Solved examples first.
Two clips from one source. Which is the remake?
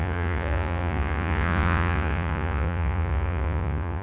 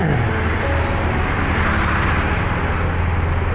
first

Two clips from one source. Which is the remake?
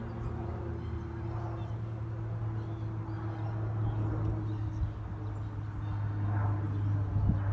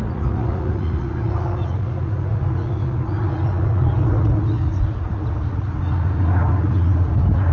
second